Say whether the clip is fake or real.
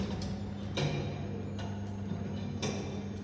real